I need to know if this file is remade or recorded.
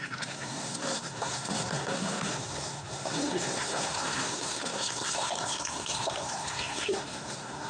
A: remade